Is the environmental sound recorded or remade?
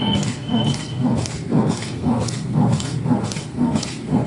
remade